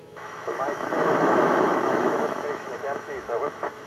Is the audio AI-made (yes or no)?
yes